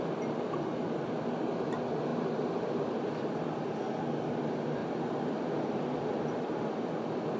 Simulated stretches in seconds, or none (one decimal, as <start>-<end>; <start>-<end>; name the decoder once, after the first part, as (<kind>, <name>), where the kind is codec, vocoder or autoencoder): 4.8-5.8 (vocoder, BigVGAN v2)